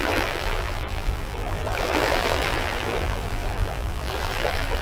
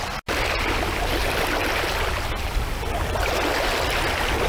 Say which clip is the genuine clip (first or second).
second